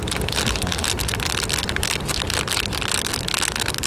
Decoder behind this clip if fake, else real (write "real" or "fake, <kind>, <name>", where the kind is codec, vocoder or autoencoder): real